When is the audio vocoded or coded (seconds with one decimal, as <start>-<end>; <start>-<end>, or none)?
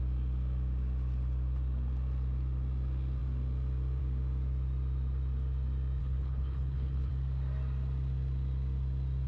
6.0-7.1